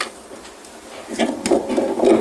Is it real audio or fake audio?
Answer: real